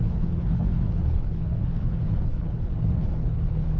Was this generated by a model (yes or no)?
yes